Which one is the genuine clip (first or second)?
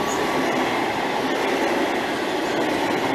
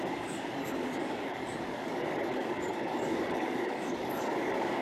first